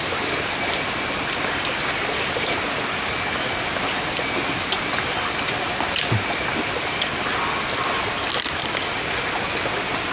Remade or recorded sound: recorded